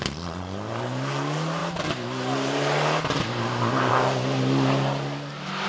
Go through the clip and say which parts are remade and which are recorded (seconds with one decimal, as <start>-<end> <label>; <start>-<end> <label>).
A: 0.0-5.7 recorded